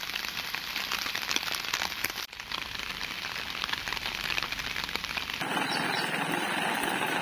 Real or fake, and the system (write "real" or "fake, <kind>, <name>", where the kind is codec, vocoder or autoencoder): fake, vocoder, BigVGAN v2